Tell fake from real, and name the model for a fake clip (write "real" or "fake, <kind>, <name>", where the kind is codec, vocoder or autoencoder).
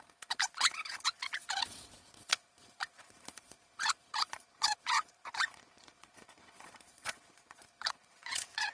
fake, vocoder, Vocos